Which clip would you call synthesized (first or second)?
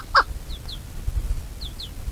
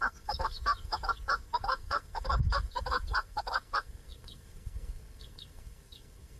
second